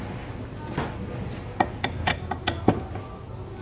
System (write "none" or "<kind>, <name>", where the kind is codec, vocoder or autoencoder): none